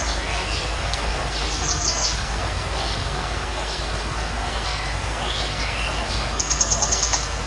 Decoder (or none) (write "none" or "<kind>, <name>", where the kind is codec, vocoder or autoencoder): codec, SNAC